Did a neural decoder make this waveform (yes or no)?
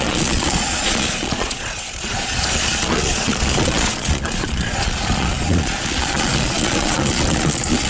yes